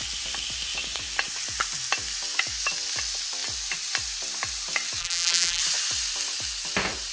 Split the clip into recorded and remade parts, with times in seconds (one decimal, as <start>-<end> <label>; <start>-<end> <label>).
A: 0.0-5.0 recorded; 5.0-5.6 remade; 5.6-7.1 recorded